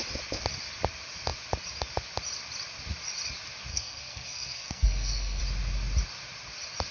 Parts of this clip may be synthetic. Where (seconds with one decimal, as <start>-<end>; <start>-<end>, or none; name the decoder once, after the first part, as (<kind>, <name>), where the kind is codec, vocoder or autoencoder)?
3.7-5.4 (codec, SNAC)